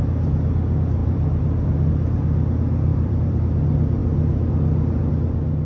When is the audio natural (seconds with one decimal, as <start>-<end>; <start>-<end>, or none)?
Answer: 0.0-1.0; 1.9-2.9; 3.4-5.7